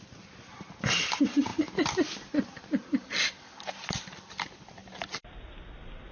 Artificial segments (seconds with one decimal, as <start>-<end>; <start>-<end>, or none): none

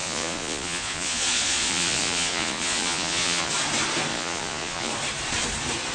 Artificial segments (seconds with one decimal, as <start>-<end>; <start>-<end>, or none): 0.0-3.5; 4.1-4.9

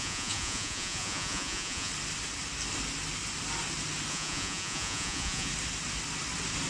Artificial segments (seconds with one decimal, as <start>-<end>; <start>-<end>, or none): 0.0-1.9; 4.1-5.5

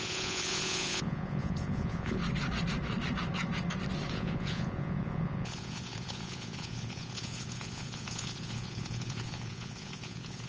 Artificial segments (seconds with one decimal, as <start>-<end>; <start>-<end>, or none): 0.0-2.2; 4.1-10.5

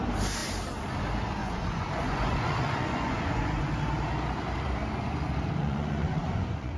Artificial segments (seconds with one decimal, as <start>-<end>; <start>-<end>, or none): 1.4-3.7; 5.6-6.8

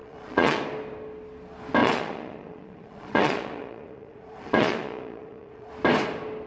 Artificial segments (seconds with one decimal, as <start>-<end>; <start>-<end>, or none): 0.0-0.6; 1.8-5.7

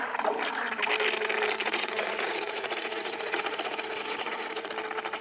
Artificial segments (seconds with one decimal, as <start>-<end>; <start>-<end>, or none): 1.6-4.7